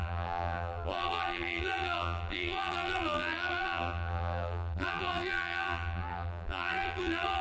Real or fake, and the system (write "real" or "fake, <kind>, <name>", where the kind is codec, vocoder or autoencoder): fake, vocoder, BigVGAN v2